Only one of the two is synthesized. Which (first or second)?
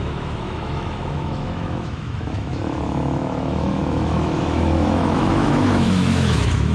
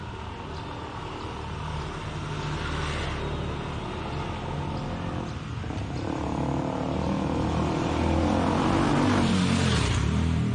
first